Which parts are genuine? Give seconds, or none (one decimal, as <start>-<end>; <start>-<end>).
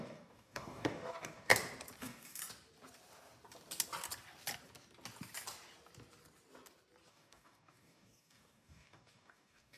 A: 1.5-2.0; 2.4-7.1